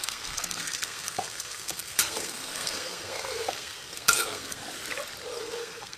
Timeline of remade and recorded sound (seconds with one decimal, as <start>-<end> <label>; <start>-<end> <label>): 0.0-4.6 remade; 4.6-5.4 recorded; 5.4-6.0 remade